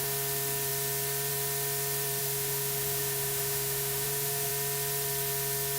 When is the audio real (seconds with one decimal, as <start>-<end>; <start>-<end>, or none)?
0.0-2.2; 4.5-5.8